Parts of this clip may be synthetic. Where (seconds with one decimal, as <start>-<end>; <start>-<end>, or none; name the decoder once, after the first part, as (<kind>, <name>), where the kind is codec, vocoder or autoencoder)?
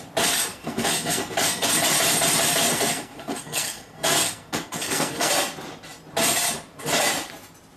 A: 0.5-1.7 (codec, SNAC); 2.7-5.3